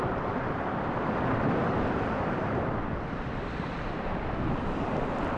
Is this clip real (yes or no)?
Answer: no